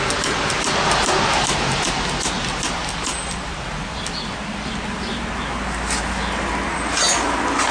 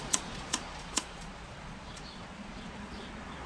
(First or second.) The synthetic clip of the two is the second